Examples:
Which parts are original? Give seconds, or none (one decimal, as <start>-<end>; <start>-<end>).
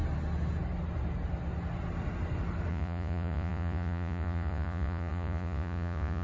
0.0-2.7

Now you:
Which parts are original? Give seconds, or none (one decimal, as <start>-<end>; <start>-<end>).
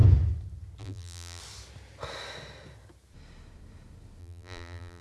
0.0-0.8; 1.4-4.2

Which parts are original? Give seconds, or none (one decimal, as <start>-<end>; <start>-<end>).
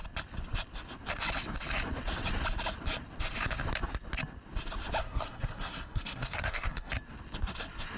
0.0-5.0; 6.9-8.0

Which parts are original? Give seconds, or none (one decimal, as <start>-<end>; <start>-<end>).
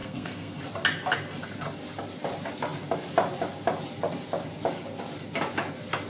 0.6-6.1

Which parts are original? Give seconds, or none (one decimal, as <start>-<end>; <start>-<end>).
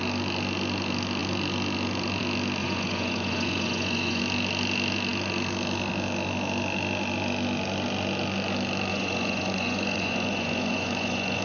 0.0-2.6; 4.2-8.9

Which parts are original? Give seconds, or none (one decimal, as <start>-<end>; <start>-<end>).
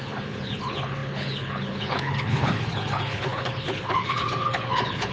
none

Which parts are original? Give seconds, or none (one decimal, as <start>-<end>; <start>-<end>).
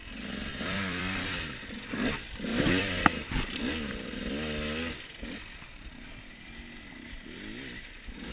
0.0-0.5; 1.6-2.5; 3.6-8.3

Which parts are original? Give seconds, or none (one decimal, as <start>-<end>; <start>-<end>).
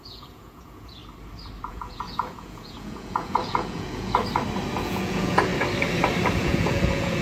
1.0-1.7; 4.2-4.8; 5.5-6.3